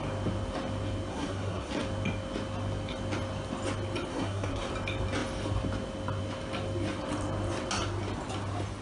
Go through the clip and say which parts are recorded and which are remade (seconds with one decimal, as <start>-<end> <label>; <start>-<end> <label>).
0.0-1.1 recorded; 1.1-1.7 remade; 1.7-4.1 recorded; 4.1-4.7 remade; 4.7-8.8 recorded